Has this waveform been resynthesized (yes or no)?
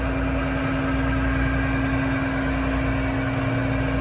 no